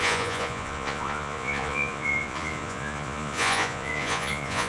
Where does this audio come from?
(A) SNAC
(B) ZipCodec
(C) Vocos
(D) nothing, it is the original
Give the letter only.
C